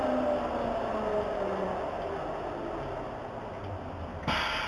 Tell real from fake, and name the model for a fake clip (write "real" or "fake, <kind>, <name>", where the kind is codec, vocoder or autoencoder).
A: real